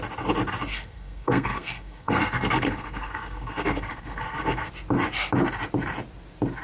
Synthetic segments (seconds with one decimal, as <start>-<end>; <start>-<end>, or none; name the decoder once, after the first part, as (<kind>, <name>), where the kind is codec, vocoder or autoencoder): 0.7-4.7 (codec, SNAC)